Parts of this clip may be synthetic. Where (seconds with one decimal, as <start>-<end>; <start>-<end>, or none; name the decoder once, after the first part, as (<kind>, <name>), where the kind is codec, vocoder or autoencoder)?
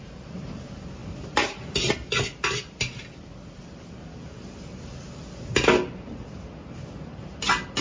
none